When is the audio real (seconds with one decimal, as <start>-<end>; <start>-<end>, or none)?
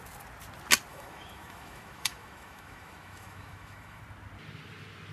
0.0-0.9; 4.0-5.1